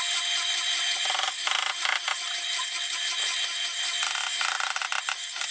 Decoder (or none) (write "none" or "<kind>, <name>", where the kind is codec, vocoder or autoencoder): none